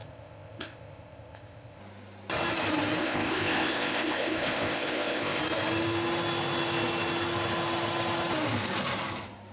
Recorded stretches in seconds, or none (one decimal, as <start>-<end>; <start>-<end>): 1.8-3.0; 5.4-9.5

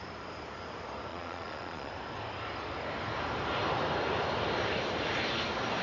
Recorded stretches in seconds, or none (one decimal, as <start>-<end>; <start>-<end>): 0.0-1.1; 1.9-5.8

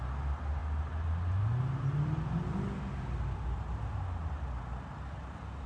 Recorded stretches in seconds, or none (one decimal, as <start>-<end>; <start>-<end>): 0.0-5.7

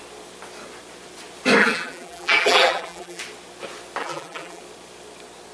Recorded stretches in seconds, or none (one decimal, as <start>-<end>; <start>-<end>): 0.0-1.6; 3.2-4.0; 4.6-5.5

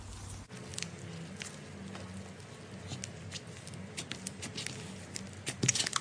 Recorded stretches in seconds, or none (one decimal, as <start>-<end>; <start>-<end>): 0.0-6.0

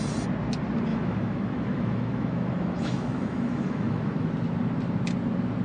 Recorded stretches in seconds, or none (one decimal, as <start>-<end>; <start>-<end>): 0.0-0.9; 4.3-5.6

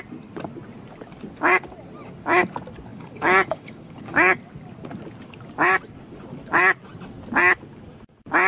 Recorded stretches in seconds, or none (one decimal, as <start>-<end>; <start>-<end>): 0.0-2.9; 4.4-8.5

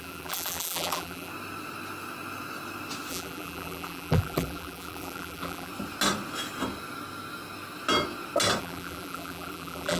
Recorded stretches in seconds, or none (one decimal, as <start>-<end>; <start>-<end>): 1.3-3.1; 5.7-8.6